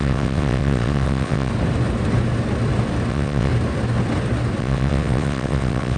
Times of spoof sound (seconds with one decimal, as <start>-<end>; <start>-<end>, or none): 0.0-1.5; 3.1-3.5; 4.6-6.0